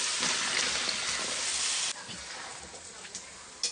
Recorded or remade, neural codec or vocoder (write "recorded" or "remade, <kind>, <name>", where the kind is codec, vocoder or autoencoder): recorded